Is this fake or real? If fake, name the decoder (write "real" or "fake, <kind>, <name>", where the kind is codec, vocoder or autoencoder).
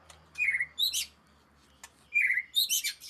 real